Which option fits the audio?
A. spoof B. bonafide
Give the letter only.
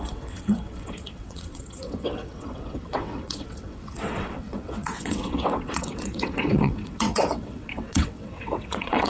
A